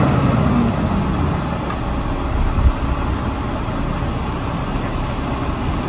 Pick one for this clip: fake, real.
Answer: real